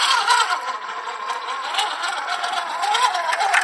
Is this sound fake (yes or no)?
no